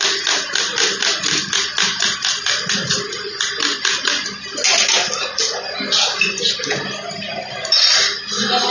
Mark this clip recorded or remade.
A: recorded